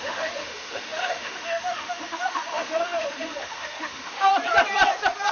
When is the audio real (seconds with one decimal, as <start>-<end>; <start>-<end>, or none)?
4.3-5.3